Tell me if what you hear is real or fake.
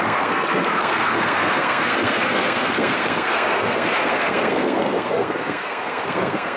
fake